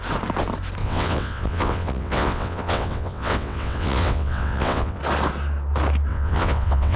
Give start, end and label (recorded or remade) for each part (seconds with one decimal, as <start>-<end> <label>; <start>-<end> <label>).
0.0-0.8 recorded; 0.8-5.0 remade; 5.0-6.1 recorded; 6.1-7.0 remade